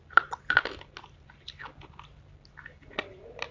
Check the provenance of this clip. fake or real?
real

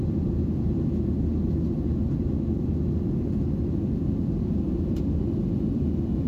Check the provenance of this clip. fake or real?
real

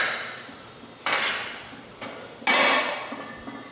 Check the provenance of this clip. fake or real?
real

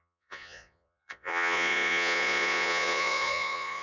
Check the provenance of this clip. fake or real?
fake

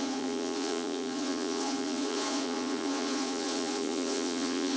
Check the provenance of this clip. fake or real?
fake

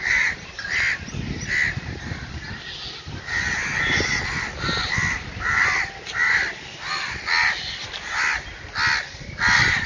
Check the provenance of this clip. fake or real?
real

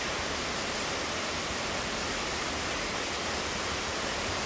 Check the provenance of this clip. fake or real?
real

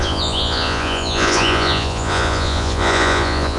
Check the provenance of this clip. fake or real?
fake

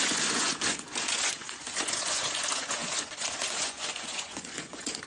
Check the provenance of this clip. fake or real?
fake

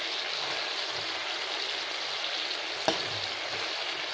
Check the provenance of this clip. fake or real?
real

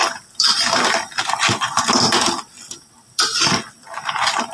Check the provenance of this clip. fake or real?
real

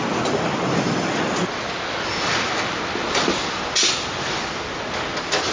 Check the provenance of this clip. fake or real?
real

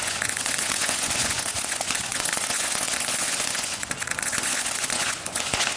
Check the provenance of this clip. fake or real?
fake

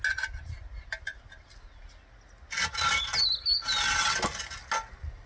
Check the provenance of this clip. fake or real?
real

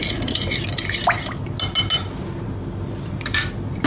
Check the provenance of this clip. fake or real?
real